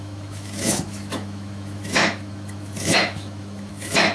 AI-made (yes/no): yes